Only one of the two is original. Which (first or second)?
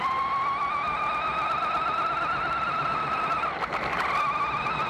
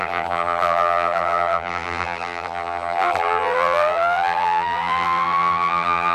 first